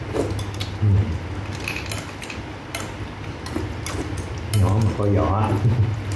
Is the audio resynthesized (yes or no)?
no